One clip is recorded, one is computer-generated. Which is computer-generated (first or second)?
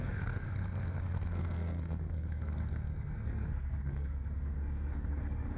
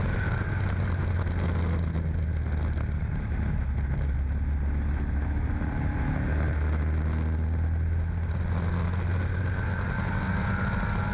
first